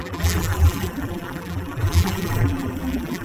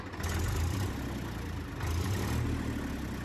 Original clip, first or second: second